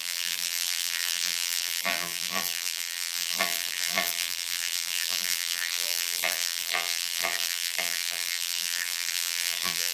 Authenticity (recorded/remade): remade